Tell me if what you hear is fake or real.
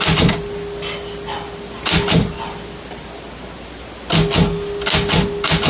real